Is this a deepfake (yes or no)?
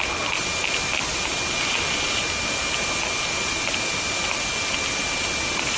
no